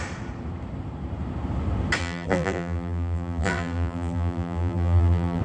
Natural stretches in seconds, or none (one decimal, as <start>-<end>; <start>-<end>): 0.0-2.0

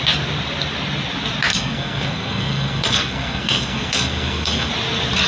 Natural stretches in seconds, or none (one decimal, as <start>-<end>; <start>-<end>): 0.0-1.5; 4.7-5.3

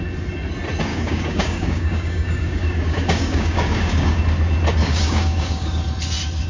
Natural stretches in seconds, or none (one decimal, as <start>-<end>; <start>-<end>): 0.0-0.9; 4.2-4.8; 5.8-6.5

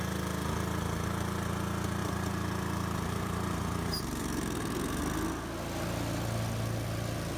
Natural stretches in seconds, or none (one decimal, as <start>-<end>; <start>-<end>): 0.0-2.0; 5.0-7.4

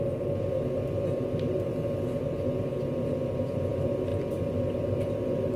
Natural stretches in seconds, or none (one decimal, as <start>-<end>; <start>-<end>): 0.0-1.7; 2.2-5.6